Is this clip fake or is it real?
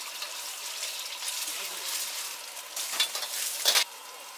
real